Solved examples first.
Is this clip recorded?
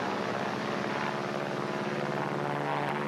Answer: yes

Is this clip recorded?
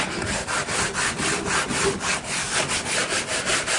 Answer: yes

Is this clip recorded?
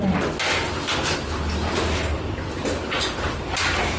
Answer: yes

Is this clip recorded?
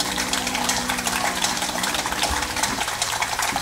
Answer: no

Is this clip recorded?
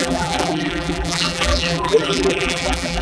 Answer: no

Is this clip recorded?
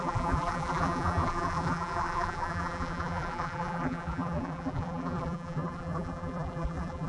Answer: no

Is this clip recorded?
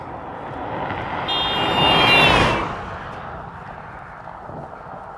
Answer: yes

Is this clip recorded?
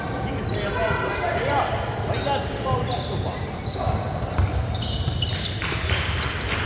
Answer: yes